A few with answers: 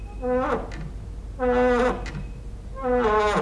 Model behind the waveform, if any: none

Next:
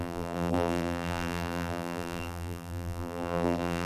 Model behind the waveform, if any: vocoder, BigVGAN v2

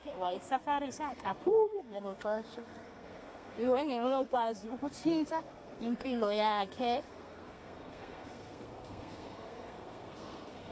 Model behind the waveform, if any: codec, SNAC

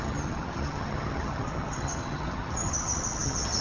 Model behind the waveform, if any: vocoder, HiFi-GAN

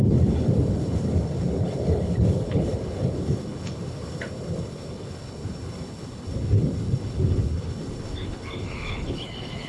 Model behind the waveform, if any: codec, HILCodec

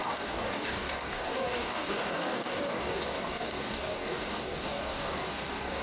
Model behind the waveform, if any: codec, DAC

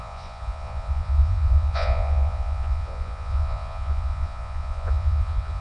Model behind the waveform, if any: vocoder, Vocos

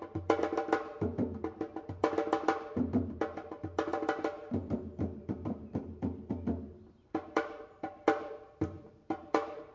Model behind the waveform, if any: vocoder, BigVGAN v2